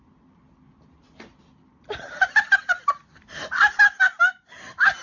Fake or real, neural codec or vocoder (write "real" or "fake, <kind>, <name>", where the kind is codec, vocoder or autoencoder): real